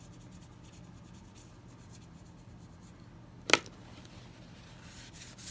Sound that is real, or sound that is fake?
real